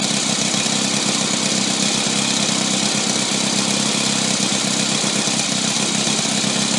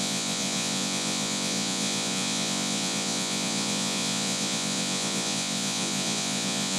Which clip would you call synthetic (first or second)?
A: second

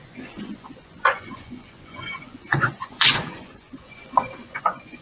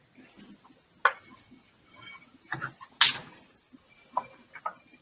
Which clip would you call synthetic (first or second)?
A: first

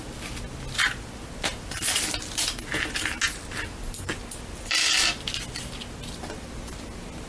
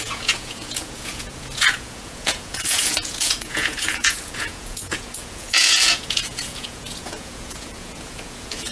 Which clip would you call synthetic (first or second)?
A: second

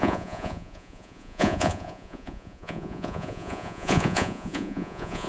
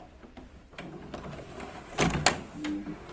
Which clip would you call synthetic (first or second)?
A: first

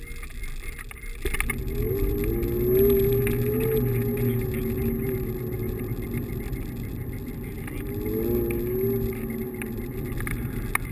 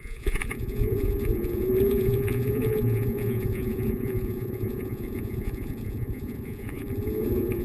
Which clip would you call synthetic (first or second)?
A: second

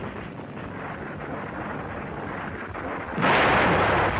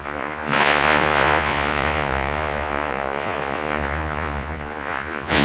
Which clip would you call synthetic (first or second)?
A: second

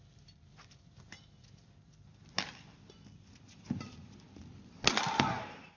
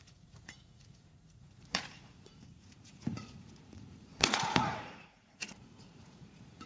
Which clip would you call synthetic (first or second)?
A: second